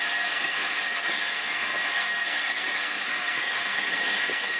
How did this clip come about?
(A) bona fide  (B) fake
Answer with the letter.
B